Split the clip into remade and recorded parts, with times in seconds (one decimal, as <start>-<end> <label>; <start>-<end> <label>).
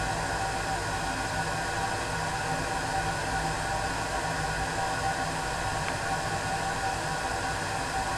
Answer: 0.0-5.7 recorded; 5.7-6.8 remade; 6.8-8.2 recorded